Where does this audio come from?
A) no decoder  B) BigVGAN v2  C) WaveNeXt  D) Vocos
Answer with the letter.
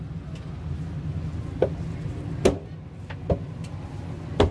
A